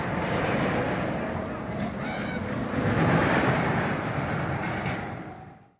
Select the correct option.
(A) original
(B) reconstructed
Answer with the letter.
A